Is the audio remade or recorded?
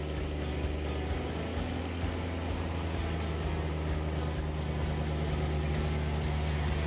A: recorded